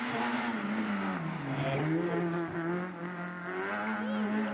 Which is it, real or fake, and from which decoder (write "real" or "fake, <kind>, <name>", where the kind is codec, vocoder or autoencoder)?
real